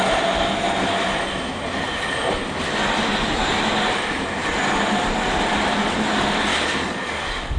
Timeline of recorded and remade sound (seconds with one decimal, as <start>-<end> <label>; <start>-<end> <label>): 0.0-6.5 recorded; 6.5-7.6 remade